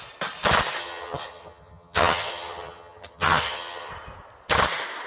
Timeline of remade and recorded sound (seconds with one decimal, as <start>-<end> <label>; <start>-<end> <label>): 0.0-0.8 recorded; 0.8-3.9 remade; 3.9-5.1 recorded